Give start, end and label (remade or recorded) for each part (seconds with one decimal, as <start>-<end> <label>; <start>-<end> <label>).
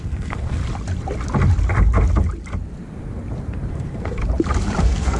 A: 0.0-0.6 remade; 0.6-3.7 recorded; 3.7-4.2 remade; 4.2-4.8 recorded; 4.8-5.2 remade